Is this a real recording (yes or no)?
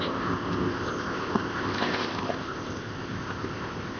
no